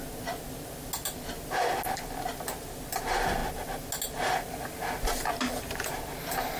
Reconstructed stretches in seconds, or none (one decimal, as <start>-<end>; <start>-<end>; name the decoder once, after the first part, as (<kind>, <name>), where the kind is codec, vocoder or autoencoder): none